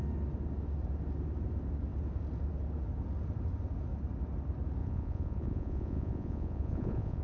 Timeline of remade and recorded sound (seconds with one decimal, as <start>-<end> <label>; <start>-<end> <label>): 0.0-4.8 recorded; 4.8-7.2 remade